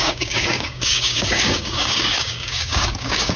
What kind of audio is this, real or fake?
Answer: fake